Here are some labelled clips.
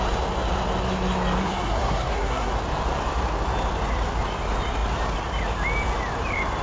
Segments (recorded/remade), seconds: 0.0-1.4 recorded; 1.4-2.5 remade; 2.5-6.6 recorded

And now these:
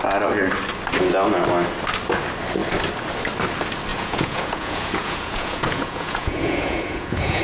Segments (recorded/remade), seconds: 0.0-3.9 recorded; 3.9-7.4 remade

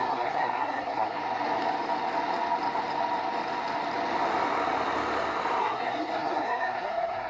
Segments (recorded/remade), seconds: 0.0-1.2 remade; 1.2-5.6 recorded; 5.6-7.3 remade

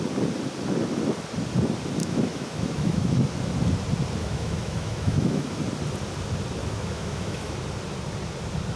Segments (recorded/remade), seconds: 0.0-2.0 recorded; 2.0-3.1 remade; 3.1-4.2 recorded; 4.2-5.6 remade; 5.6-6.6 recorded; 6.6-7.5 remade; 7.5-8.8 recorded

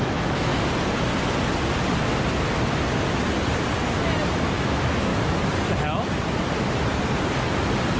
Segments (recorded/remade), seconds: 0.0-0.5 remade; 0.5-4.4 recorded; 4.4-5.1 remade; 5.1-8.0 recorded